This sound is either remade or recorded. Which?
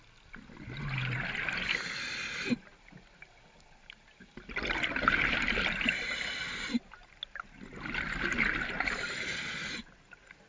recorded